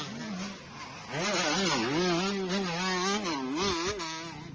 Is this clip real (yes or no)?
yes